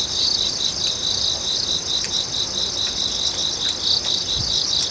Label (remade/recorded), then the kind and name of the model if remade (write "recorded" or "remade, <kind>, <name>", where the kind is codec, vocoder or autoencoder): recorded